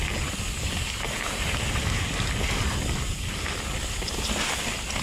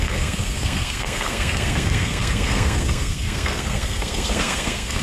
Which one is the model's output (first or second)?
second